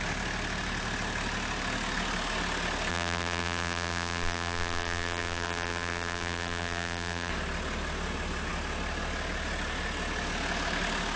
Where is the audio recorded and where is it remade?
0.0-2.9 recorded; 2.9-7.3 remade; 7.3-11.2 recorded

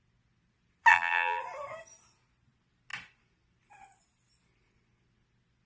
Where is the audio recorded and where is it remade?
0.0-0.9 recorded; 0.9-1.4 remade; 1.4-5.7 recorded

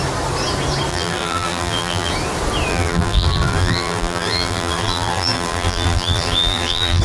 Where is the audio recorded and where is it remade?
0.0-0.9 recorded; 0.9-2.1 remade; 2.1-2.7 recorded; 2.7-7.0 remade

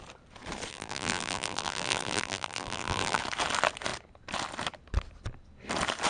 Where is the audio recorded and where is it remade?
0.0-0.7 recorded; 0.7-3.2 remade; 3.2-6.1 recorded